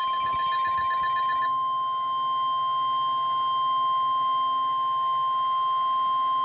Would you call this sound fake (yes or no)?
no